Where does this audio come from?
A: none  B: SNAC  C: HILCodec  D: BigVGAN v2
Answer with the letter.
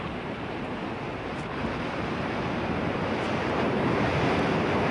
D